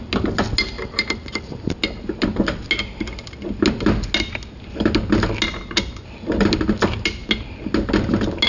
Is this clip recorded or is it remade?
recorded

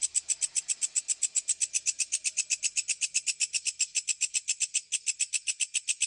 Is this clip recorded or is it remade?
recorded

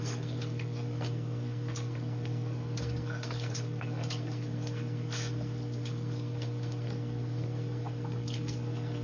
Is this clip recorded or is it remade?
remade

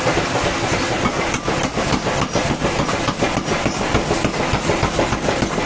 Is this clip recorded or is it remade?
recorded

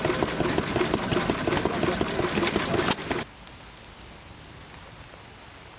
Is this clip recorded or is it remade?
recorded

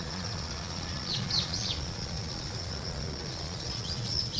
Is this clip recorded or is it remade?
remade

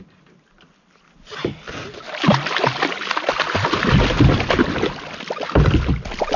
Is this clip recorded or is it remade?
recorded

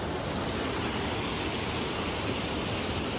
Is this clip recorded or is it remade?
recorded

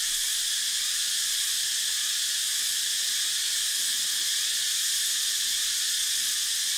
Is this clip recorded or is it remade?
recorded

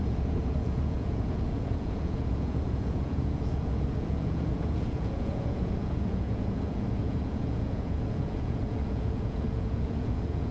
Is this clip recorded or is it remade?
remade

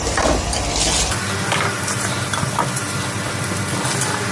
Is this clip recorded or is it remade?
recorded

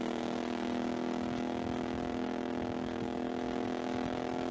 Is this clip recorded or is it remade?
remade